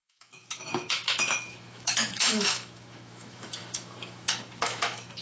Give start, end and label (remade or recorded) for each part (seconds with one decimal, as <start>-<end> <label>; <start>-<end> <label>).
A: 0.0-5.2 remade